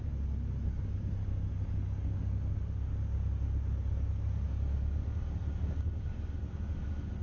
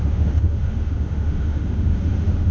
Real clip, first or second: first